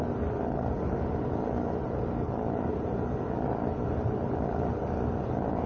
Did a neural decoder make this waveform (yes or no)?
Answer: no